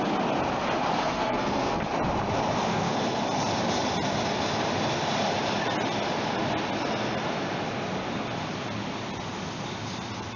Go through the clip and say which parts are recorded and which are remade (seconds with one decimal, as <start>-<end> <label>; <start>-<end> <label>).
0.0-1.0 recorded; 1.0-1.9 remade; 1.9-2.7 recorded; 2.7-3.2 remade; 3.2-10.4 recorded